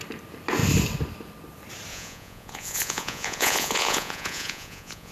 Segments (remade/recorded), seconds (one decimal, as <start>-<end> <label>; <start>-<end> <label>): 0.0-1.9 recorded; 1.9-5.1 remade

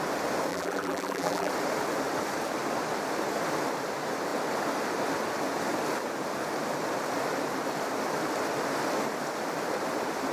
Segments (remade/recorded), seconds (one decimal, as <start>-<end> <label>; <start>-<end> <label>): 0.0-0.5 recorded; 0.5-1.5 remade; 1.5-10.3 recorded

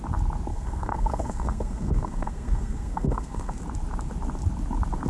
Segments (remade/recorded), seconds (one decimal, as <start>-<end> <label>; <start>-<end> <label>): 0.0-0.5 recorded; 0.5-3.6 remade; 3.6-5.1 recorded

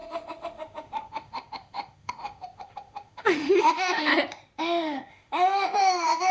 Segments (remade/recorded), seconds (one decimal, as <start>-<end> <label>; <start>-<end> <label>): 0.0-4.1 remade; 4.1-4.6 recorded; 4.6-6.3 remade

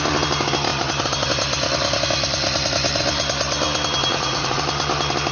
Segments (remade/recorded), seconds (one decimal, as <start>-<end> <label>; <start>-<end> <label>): 0.0-4.0 recorded; 4.0-4.6 remade; 4.6-5.3 recorded